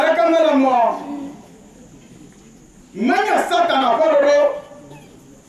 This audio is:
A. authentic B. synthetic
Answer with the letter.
A